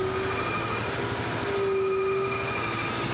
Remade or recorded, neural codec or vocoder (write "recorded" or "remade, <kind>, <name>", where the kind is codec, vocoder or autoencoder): recorded